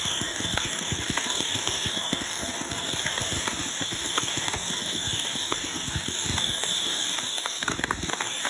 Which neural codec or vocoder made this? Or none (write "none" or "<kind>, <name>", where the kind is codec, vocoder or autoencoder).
codec, DAC